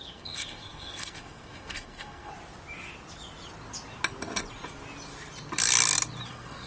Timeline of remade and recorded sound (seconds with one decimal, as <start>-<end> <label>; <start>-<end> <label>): 0.0-2.3 remade; 2.3-6.3 recorded; 6.3-6.7 remade